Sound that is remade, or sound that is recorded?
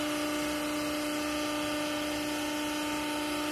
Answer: recorded